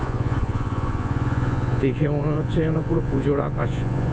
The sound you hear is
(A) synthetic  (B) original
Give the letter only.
A